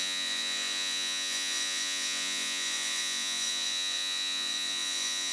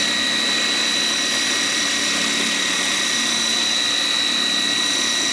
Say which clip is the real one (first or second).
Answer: second